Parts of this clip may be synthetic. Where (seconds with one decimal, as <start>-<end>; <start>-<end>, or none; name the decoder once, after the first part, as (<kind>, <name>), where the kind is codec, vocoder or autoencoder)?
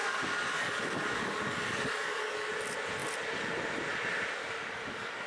0.0-2.5 (codec, DAC); 4.4-5.3